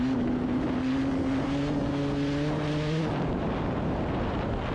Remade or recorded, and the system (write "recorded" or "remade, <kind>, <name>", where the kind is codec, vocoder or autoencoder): recorded